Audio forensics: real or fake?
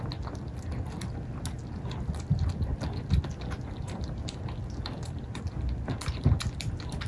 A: real